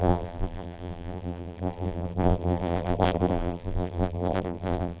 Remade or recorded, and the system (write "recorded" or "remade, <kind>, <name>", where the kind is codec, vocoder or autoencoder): remade, vocoder, BigVGAN v2